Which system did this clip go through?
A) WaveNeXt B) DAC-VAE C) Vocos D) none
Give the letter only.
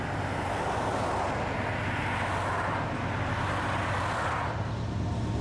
D